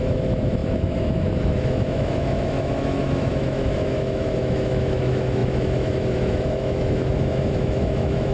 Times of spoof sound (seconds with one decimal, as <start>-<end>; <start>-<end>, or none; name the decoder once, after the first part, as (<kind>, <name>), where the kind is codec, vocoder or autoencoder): 0.0-8.3 (autoencoder, DAC-VAE)